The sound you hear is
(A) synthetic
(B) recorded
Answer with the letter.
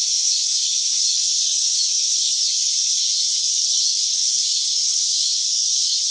A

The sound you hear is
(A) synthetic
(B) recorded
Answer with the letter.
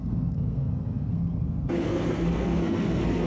A